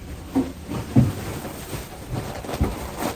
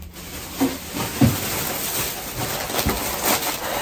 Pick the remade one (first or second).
first